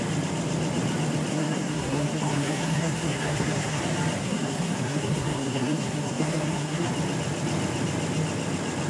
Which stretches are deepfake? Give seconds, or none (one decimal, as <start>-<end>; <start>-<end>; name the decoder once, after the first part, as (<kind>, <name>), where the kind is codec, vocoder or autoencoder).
1.3-3.8 (codec, SNAC); 4.2-6.9